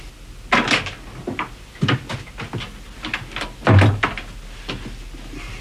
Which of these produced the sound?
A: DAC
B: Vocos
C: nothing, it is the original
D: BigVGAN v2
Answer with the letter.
C